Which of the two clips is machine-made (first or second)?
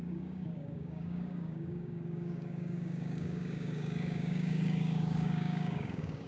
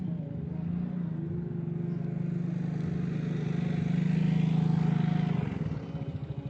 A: first